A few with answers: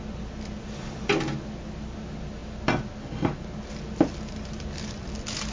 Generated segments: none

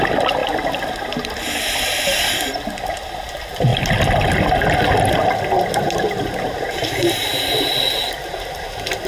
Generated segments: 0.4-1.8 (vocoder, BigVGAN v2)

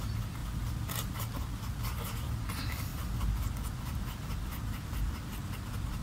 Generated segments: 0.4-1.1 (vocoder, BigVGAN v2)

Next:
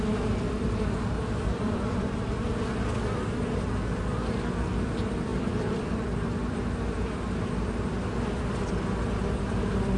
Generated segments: 0.0-10.0 (vocoder, BigVGAN v2)

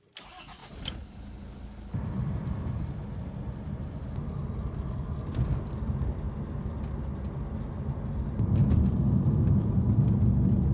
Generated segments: 0.6-2.4 (vocoder, BigVGAN v2); 4.4-5.3